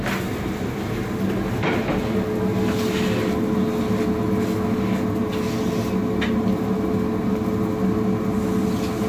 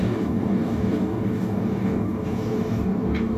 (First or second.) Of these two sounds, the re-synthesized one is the second